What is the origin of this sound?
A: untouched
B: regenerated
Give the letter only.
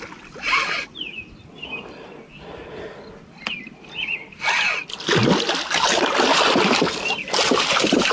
A